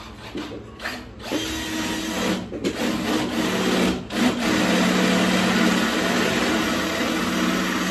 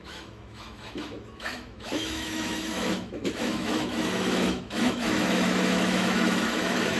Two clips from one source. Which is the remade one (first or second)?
second